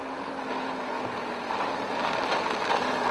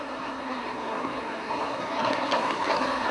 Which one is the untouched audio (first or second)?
first